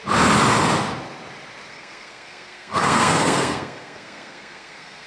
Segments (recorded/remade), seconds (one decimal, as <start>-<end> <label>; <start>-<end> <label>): 0.0-1.7 recorded; 1.7-5.1 remade